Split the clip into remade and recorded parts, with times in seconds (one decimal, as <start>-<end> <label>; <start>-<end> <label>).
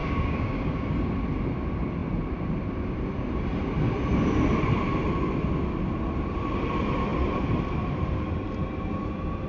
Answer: 0.0-0.9 remade; 0.9-9.5 recorded